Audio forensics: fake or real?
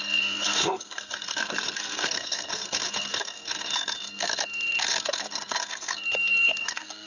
fake